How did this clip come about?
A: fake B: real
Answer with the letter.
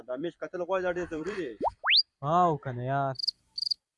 A